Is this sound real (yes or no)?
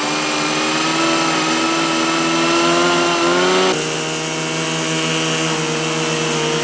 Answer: yes